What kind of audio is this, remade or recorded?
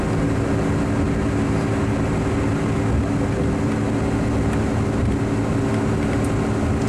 recorded